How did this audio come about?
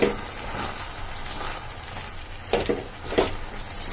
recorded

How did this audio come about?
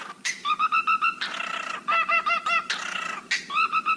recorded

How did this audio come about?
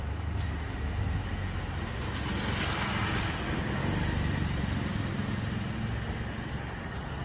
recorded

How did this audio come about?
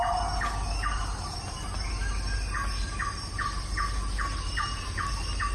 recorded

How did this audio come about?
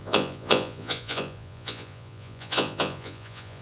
remade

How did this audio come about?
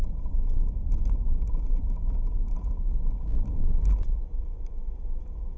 recorded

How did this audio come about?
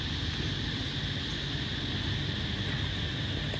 recorded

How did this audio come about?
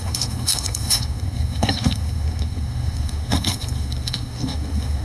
remade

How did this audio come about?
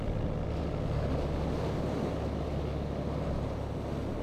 recorded